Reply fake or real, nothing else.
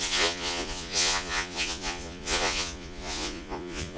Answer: fake